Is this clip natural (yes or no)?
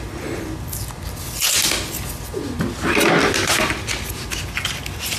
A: yes